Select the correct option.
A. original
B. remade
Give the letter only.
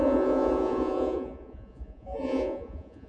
B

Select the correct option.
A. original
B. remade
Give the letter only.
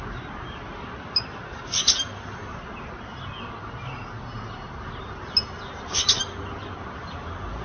A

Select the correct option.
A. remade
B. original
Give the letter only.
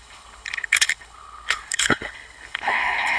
A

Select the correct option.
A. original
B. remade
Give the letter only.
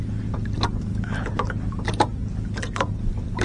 A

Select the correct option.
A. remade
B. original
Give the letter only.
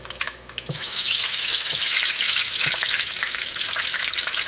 A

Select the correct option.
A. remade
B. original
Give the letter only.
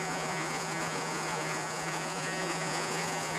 A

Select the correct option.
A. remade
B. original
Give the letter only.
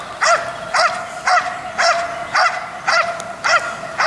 B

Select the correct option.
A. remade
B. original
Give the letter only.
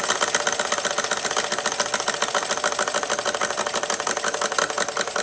B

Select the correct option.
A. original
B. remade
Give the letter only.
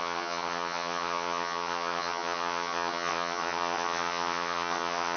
B